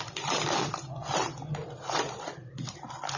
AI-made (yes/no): yes